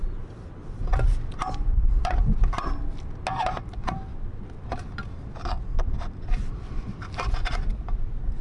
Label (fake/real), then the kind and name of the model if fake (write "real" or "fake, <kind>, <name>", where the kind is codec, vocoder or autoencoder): real